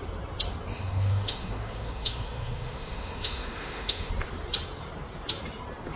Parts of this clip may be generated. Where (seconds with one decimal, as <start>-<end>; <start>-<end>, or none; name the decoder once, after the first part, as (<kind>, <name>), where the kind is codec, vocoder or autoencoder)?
0.7-4.1 (autoencoder, DAC-VAE)